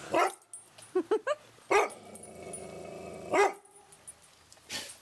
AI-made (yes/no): no